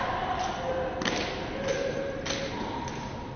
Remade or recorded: recorded